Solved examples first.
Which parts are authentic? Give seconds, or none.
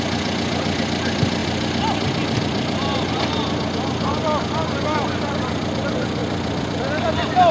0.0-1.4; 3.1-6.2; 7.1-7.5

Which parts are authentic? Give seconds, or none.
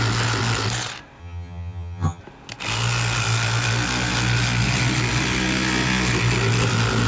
0.0-1.2; 2.2-7.1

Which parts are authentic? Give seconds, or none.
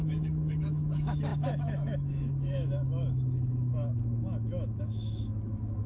none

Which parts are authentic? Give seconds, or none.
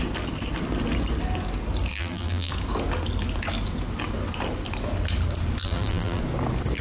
0.0-1.9; 2.5-5.6; 6.2-6.8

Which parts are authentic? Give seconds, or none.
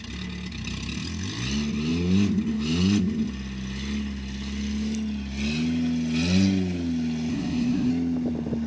0.0-7.3; 7.9-8.7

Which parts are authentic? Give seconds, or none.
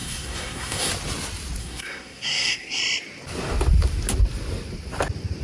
0.9-1.6; 2.8-5.4